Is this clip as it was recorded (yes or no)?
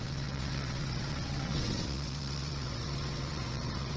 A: no